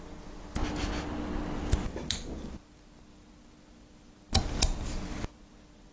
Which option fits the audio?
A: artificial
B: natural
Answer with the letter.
B